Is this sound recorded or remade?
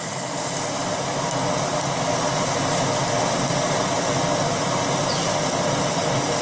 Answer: recorded